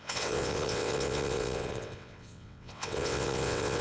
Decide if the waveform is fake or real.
fake